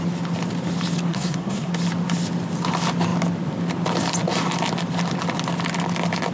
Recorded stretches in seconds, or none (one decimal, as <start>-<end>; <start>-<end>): 0.0-1.1; 1.7-6.3